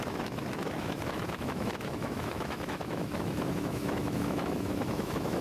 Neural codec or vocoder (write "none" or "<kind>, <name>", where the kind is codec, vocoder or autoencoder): autoencoder, DAC-VAE